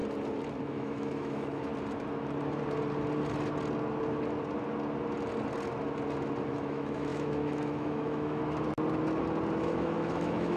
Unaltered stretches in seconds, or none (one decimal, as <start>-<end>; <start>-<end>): 0.0-0.6; 1.7-6.5; 8.4-9.6